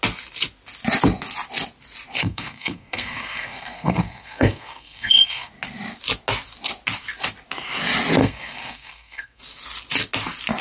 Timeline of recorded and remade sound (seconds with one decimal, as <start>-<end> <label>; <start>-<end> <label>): 0.0-2.2 recorded; 2.2-5.5 remade; 5.5-8.2 recorded; 8.2-9.4 remade; 9.4-10.6 recorded